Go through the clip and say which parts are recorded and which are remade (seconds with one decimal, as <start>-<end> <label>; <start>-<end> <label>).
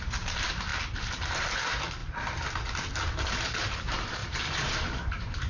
0.0-2.0 remade; 2.0-3.2 recorded; 3.2-5.5 remade